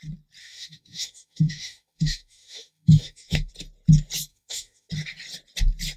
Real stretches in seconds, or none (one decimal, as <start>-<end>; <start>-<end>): 0.0-0.4; 3.5-4.3; 4.9-6.0

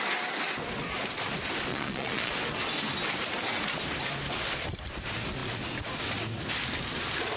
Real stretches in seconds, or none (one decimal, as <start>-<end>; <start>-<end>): 0.0-1.7; 2.3-7.4

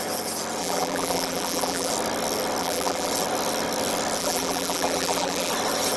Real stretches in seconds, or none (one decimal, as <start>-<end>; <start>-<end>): 0.0-0.6; 1.9-2.6; 3.1-4.2; 5.5-6.0